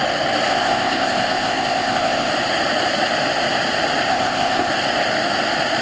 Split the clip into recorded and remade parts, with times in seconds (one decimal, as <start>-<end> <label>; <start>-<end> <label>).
0.0-0.5 recorded; 0.5-2.3 remade; 2.3-4.1 recorded; 4.1-4.7 remade; 4.7-5.8 recorded